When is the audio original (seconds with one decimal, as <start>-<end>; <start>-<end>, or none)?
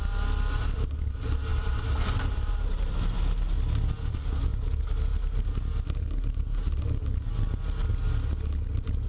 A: 0.0-1.5; 2.9-9.1